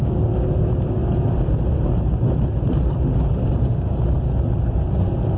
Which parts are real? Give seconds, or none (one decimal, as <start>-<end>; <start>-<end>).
0.0-5.4

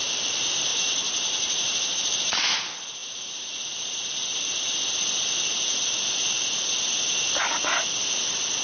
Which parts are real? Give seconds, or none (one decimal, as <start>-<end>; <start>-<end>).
0.0-0.7; 2.4-8.6

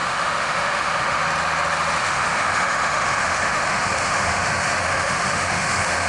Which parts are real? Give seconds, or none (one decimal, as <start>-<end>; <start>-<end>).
1.2-2.0

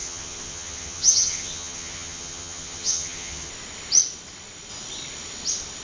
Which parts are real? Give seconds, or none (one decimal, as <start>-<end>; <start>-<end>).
3.5-5.8